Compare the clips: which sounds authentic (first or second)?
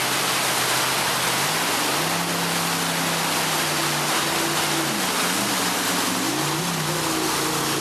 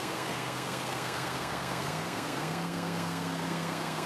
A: first